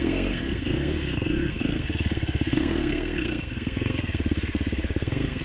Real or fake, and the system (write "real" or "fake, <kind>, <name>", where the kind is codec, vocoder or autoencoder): fake, codec, SNAC